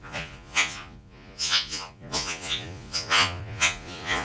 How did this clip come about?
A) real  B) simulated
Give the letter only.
B